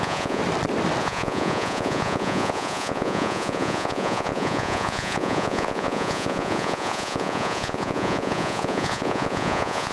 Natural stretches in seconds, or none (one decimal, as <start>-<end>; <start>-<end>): 0.4-1.0